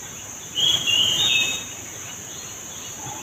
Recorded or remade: remade